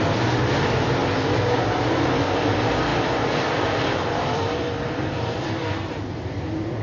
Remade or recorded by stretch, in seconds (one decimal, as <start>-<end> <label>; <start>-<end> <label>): 0.0-2.9 recorded; 2.9-5.7 remade; 5.7-6.8 recorded